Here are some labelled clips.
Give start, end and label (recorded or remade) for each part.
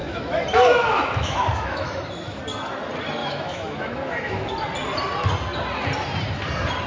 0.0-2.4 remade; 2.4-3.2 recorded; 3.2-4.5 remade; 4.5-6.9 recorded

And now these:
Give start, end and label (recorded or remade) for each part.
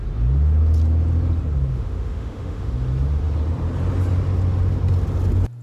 0.0-1.7 recorded; 1.7-2.7 remade; 2.7-5.6 recorded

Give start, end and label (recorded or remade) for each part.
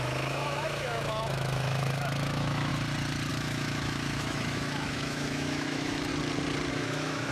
0.0-2.7 remade; 2.7-3.3 recorded; 3.3-6.1 remade; 6.1-6.7 recorded; 6.7-7.3 remade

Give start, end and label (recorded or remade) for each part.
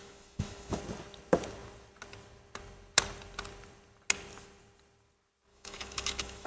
0.0-0.8 remade; 0.8-5.5 recorded; 5.5-6.5 remade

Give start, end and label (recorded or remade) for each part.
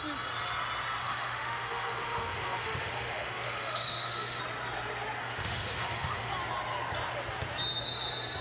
0.0-1.0 recorded; 1.0-4.4 remade; 4.4-5.4 recorded; 5.4-6.3 remade; 6.3-8.4 recorded